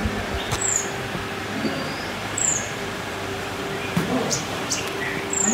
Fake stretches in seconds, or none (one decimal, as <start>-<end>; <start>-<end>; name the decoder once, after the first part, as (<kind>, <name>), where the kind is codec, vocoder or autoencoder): 0.0-0.8 (vocoder, BigVGAN v2); 1.4-4.7